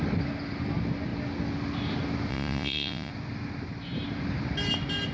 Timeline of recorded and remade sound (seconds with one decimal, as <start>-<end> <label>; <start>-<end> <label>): 0.0-2.3 recorded; 2.3-3.1 remade; 3.1-5.1 recorded